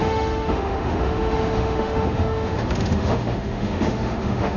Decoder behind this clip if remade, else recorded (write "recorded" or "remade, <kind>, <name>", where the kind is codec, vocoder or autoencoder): remade, autoencoder, DAC-VAE